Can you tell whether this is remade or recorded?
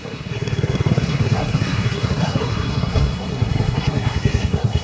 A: remade